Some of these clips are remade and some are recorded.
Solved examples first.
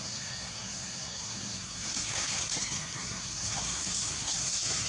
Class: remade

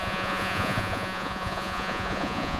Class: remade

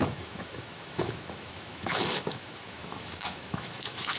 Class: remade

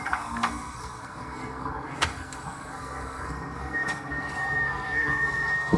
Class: remade